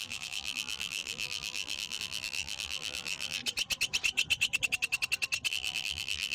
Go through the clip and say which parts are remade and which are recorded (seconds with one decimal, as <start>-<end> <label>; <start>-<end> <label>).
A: 0.0-3.4 remade; 3.4-5.5 recorded; 5.5-6.3 remade